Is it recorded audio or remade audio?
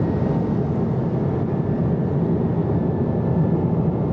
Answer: recorded